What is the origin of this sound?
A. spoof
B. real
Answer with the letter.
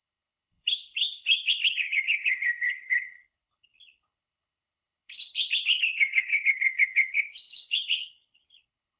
A